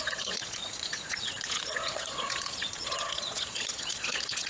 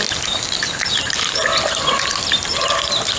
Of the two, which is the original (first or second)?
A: second